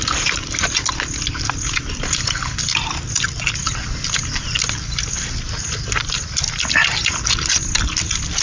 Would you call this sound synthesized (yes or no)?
no